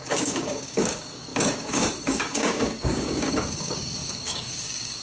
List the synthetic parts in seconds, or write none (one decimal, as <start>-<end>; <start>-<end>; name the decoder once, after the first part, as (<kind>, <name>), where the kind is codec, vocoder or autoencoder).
0.0-5.0 (codec, DAC)